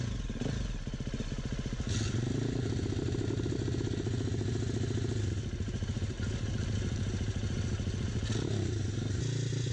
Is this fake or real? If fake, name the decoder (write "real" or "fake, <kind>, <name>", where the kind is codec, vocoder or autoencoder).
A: real